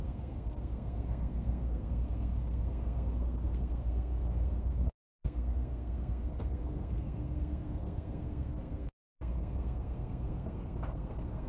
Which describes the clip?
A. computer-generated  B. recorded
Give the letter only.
A